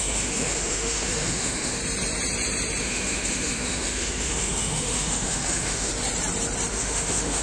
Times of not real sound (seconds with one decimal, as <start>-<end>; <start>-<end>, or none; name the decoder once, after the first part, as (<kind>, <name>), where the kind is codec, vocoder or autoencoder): 0.0-1.8 (autoencoder, DAC-VAE); 2.8-5.9; 6.7-7.4